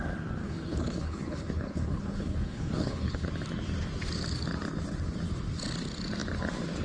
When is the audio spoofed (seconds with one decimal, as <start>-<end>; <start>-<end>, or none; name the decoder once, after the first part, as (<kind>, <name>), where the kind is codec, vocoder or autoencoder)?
0.4-3.3 (codec, HILCodec)